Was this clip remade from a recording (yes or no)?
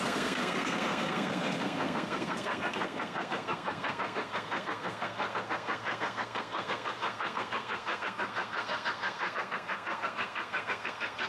yes